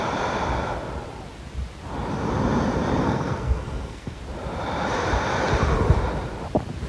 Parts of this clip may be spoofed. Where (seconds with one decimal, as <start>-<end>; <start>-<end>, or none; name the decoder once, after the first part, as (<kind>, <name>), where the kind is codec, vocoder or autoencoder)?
3.0-4.2 (codec, SNAC)

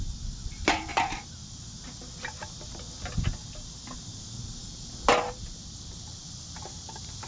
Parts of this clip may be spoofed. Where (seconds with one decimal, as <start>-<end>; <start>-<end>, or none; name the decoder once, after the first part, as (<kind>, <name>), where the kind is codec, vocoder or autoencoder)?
none

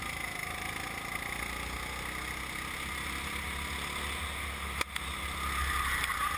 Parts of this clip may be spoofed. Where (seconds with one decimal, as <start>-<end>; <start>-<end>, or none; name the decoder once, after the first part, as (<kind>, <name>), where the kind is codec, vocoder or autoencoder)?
none

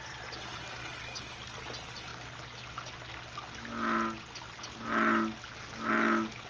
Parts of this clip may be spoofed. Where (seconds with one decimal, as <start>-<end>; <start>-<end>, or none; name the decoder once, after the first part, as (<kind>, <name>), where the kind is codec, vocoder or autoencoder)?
none

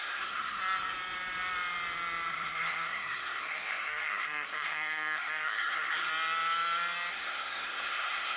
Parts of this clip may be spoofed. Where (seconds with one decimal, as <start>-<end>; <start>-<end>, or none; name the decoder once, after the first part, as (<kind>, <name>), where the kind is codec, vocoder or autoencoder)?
0.0-0.6 (codec, SNAC); 2.3-6.1; 7.1-8.4

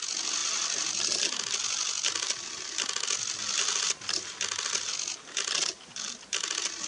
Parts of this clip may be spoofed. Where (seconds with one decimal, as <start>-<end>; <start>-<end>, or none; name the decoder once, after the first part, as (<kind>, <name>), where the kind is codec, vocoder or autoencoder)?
none

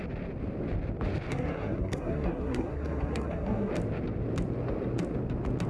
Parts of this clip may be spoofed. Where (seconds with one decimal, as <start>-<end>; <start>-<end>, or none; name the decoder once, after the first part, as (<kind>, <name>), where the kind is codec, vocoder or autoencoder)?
1.3-3.7 (codec, SNAC)